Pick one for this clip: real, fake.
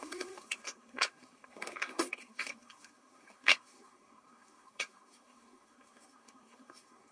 fake